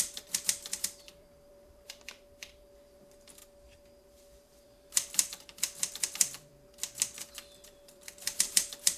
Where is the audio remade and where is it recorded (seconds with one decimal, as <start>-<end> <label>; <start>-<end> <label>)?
0.0-3.4 remade; 3.4-4.0 recorded; 4.0-6.5 remade; 6.5-7.6 recorded; 7.6-9.0 remade

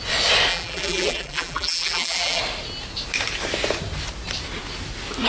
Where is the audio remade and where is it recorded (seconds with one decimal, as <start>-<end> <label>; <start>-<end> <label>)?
0.0-0.5 recorded; 0.5-2.4 remade; 2.4-5.3 recorded

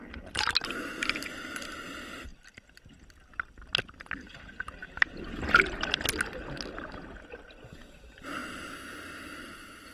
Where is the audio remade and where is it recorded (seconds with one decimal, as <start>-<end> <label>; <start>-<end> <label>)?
0.0-4.8 recorded; 4.8-5.5 remade; 5.5-9.9 recorded

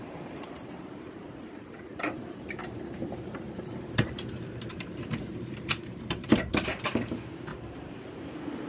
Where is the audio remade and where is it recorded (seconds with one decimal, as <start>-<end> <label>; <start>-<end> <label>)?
0.0-8.7 remade